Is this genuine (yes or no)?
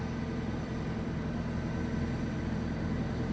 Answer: no